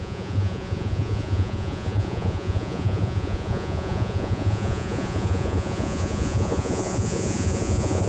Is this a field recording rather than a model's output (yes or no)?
no